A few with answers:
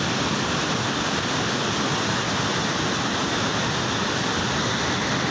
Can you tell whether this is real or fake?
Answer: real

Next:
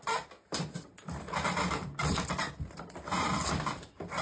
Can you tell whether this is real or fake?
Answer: real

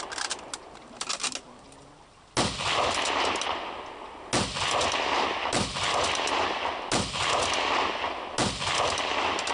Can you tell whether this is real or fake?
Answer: real